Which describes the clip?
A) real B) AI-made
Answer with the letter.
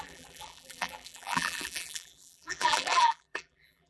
B